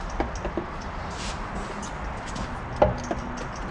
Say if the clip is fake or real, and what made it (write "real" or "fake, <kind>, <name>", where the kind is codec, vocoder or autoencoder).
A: real